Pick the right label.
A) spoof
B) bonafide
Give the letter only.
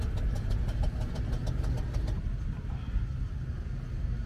B